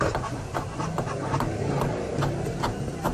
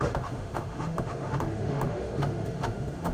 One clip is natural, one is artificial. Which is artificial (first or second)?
second